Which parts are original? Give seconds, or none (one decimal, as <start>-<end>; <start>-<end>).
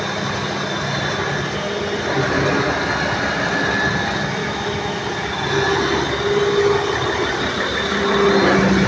0.0-4.4; 5.0-8.9